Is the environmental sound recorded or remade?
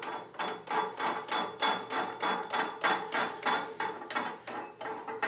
recorded